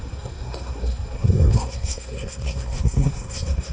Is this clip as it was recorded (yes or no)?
no